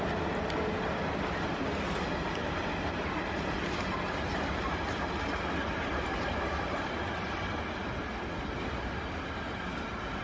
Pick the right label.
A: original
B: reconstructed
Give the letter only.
A